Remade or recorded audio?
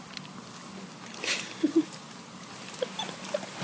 recorded